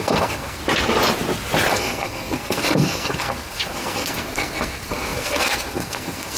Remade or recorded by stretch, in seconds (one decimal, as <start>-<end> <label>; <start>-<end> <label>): 0.0-0.6 remade; 0.6-1.7 recorded; 1.7-6.4 remade